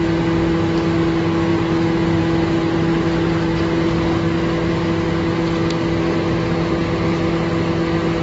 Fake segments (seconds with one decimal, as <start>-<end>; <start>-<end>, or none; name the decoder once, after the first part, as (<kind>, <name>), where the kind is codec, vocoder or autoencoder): none

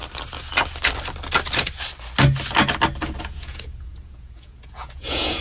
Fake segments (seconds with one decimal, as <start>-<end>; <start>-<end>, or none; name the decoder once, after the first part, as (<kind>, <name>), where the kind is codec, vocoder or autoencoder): 3.2-5.4 (vocoder, Vocos)

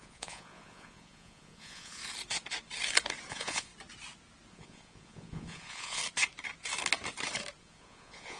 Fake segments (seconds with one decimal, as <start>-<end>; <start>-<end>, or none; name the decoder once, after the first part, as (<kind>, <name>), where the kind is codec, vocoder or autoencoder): 0.0-2.0 (vocoder, Vocos); 3.3-3.7; 4.5-6.0; 7.6-8.4

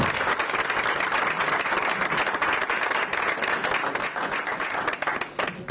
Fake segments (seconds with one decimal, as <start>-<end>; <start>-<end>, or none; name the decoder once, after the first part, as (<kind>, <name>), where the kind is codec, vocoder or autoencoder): 4.0-4.8 (vocoder, Vocos)